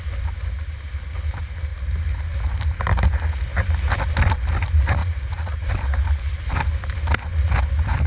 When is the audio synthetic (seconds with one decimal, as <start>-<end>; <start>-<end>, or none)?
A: 5.0-5.7